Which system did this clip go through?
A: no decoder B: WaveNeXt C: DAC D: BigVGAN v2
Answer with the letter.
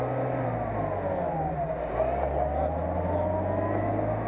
A